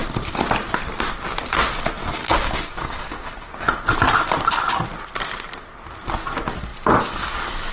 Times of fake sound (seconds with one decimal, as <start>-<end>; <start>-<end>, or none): 2.2-3.5